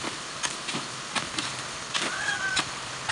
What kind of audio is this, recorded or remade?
recorded